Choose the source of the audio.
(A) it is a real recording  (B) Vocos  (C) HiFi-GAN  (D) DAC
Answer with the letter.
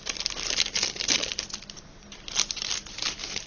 A